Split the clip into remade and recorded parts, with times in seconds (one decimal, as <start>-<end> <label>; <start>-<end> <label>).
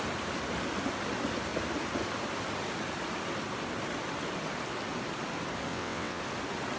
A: 0.0-5.7 recorded; 5.7-6.2 remade; 6.2-6.8 recorded